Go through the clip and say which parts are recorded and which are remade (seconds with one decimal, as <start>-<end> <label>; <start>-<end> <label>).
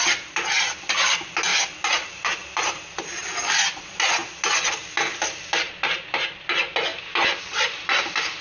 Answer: 0.0-8.4 recorded